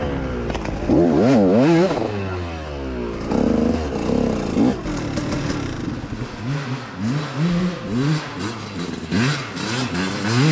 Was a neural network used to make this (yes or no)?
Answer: no